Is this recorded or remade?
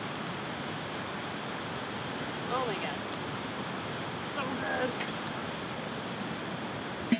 recorded